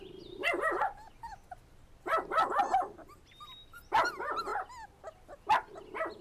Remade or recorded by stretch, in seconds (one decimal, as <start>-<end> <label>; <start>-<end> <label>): 0.0-6.2 recorded